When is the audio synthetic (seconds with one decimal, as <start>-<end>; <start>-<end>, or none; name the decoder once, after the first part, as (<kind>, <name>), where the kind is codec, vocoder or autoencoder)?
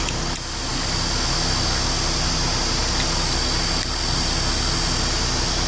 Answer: none